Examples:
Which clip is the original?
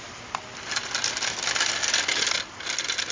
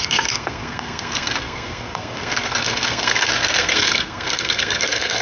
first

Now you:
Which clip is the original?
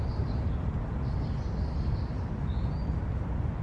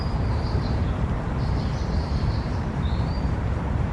first